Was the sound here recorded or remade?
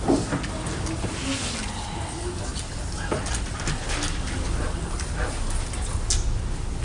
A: recorded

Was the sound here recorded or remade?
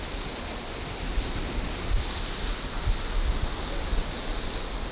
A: recorded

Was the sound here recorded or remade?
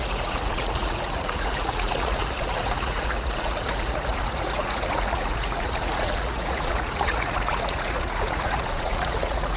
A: remade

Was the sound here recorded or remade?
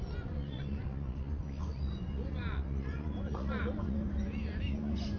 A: remade